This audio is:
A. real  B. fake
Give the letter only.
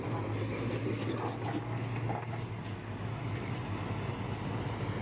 A